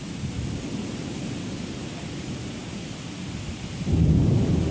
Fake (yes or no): no